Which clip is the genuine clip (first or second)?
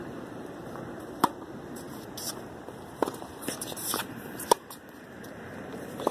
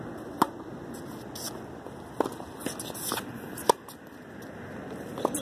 second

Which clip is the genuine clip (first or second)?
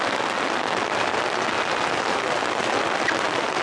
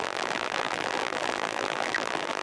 first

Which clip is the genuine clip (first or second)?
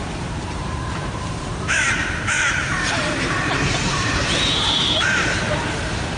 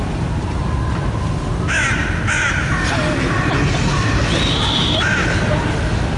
second